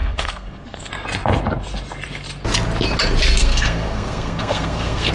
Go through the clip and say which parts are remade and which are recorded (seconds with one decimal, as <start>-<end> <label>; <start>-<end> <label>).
0.0-0.9 remade; 0.9-3.4 recorded; 3.4-5.1 remade